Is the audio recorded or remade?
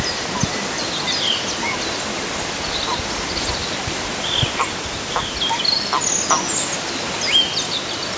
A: recorded